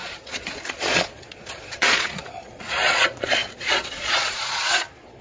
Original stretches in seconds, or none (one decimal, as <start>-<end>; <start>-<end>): none